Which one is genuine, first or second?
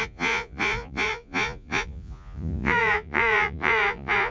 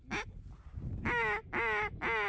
second